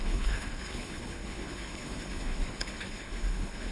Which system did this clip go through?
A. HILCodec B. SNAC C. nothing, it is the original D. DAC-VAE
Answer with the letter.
A